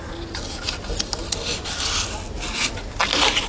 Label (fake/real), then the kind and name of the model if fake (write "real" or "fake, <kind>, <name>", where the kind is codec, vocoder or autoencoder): real